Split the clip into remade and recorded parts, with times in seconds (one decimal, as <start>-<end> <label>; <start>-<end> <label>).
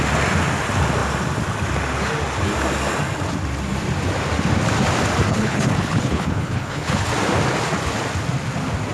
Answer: 0.0-5.3 recorded; 5.3-7.1 remade; 7.1-8.9 recorded